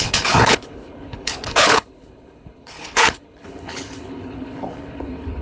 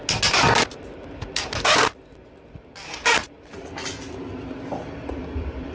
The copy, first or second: first